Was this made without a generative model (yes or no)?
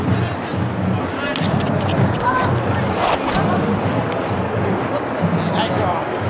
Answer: yes